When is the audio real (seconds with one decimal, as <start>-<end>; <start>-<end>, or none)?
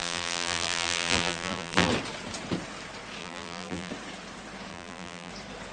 1.9-3.2; 3.9-4.7; 5.3-5.7